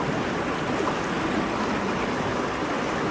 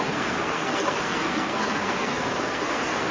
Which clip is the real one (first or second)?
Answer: first